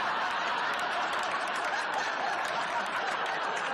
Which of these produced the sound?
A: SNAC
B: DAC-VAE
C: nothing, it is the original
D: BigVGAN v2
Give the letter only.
D